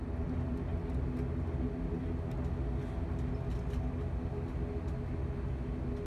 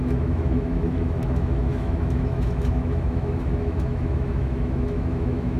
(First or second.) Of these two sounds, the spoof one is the second